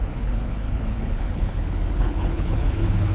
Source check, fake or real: fake